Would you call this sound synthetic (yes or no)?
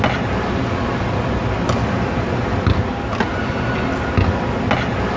no